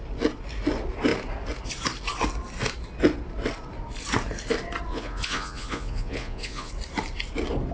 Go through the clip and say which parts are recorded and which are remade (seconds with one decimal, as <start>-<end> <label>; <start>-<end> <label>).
0.0-4.9 recorded; 4.9-6.7 remade; 6.7-7.7 recorded